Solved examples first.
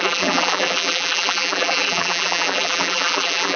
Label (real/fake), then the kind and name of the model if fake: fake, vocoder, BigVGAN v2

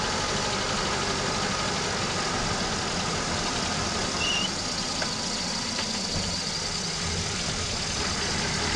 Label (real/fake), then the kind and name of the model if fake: real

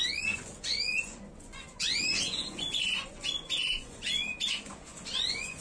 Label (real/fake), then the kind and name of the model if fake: fake, vocoder, Vocos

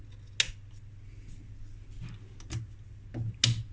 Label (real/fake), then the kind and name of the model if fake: real